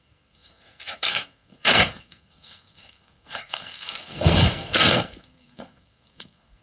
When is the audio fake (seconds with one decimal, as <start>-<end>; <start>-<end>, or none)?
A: 0.0-6.6

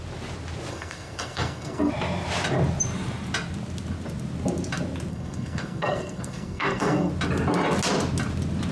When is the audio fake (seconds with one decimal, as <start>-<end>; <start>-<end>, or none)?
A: 0.7-1.9; 5.1-7.1

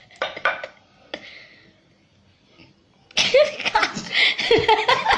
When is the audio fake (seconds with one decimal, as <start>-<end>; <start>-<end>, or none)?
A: none

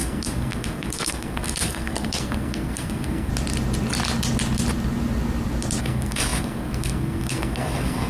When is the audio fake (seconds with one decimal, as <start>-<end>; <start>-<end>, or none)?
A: 0.0-3.3; 5.8-8.1

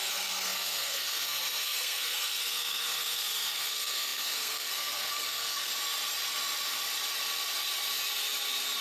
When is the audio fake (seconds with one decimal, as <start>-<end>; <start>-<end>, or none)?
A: 0.0-5.7

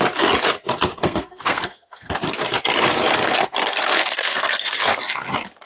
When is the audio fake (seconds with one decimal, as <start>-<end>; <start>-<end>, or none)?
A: 1.0-2.1; 3.2-5.0

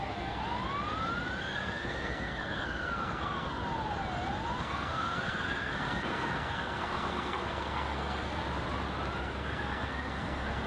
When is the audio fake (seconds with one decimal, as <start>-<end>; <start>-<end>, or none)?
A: 0.0-0.4; 1.4-3.6; 4.6-8.4; 9.2-10.7

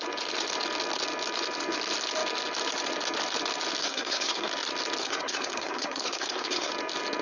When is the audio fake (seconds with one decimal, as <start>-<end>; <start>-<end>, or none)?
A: 3.8-4.5; 5.0-6.7